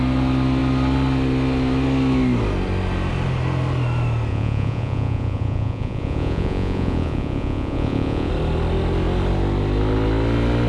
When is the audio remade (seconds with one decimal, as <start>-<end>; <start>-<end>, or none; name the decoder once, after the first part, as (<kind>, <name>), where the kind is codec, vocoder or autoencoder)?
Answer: 4.3-8.3 (vocoder, Vocos)